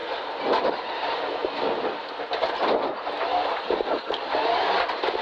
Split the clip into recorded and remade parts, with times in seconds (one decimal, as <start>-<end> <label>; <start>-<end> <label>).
0.0-5.2 recorded